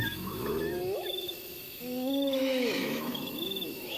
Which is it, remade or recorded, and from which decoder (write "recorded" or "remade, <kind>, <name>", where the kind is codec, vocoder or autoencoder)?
remade, autoencoder, DAC-VAE